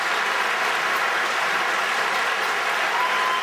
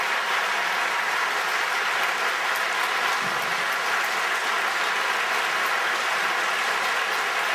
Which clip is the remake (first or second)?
first